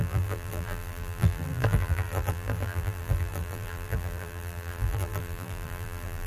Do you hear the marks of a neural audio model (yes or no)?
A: yes